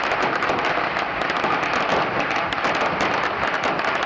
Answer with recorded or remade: recorded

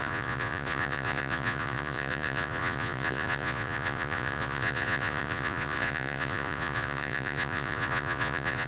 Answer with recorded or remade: remade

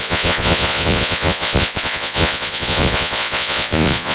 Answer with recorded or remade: remade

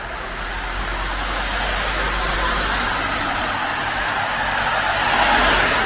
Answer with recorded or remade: recorded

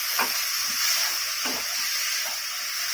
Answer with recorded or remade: recorded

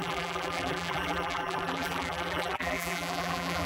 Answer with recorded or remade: remade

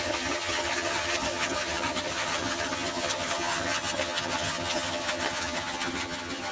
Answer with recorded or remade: remade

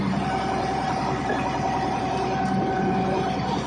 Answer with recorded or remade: remade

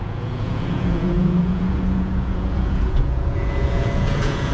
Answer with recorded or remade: remade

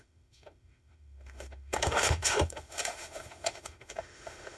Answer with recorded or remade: remade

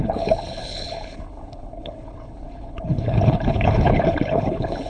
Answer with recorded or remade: remade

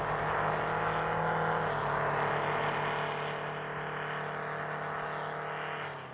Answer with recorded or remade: recorded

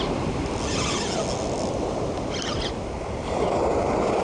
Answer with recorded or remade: recorded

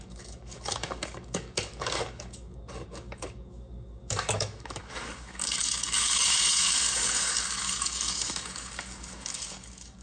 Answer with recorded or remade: remade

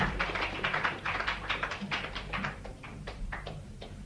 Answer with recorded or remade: remade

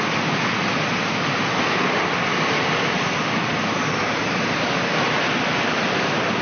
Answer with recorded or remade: recorded